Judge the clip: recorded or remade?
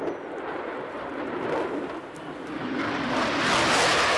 recorded